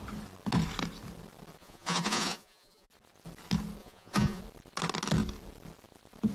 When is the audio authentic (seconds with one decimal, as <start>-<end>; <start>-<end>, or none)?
0.0-1.6; 2.9-3.8; 4.4-6.3